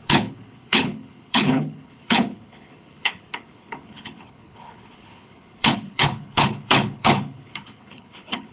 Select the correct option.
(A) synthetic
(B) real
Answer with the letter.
A